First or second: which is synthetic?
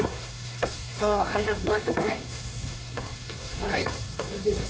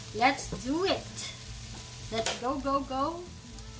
first